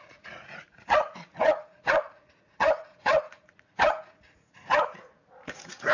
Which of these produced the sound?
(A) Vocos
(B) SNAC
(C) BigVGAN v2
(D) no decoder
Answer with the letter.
A